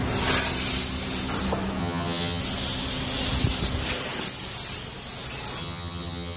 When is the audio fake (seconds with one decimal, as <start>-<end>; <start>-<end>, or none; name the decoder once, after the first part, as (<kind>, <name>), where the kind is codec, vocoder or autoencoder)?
1.8-2.4 (vocoder, HiFi-GAN); 5.6-6.4

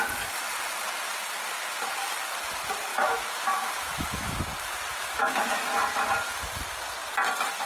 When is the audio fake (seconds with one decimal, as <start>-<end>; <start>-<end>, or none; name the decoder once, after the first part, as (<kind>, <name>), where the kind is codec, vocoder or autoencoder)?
2.9-4.4 (autoencoder, DAC-VAE); 4.9-5.4

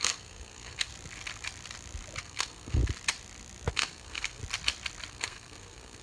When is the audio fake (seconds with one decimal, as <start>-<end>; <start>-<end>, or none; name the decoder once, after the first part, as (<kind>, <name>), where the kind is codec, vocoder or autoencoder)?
0.0-0.9 (codec, SNAC); 2.2-2.8; 3.7-4.4; 5.1-6.0

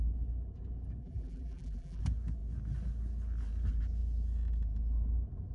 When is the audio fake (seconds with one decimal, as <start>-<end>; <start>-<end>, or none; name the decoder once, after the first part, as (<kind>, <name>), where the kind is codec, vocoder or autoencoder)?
1.0-2.0 (vocoder, BigVGAN v2)

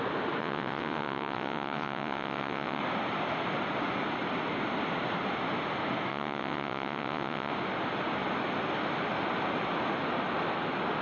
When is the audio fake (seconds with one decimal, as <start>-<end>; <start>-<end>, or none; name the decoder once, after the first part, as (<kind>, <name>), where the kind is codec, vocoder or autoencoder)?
0.4-2.8 (vocoder, WaveNeXt); 6.1-7.5

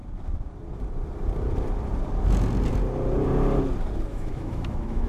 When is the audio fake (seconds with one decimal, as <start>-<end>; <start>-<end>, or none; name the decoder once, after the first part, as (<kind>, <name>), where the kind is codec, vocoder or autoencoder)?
4.1-5.1 (autoencoder, DAC-VAE)

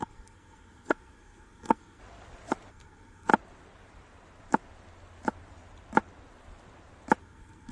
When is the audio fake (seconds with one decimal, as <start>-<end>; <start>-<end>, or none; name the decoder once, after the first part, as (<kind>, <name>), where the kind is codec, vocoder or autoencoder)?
0.0-2.0 (codec, SNAC); 2.7-3.3; 7.2-7.7

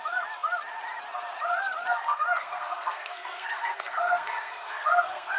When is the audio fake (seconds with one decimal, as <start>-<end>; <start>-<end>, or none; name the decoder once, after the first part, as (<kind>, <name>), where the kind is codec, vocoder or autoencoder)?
1.9-5.4 (codec, SNAC)